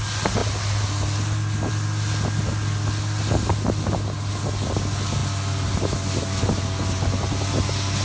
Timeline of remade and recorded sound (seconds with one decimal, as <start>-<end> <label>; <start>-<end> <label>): 0.0-8.0 recorded